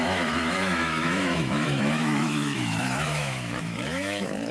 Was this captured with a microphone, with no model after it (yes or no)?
no